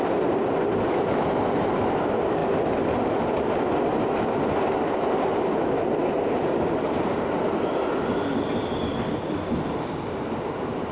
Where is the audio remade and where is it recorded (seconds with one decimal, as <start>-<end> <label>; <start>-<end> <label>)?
0.0-10.9 recorded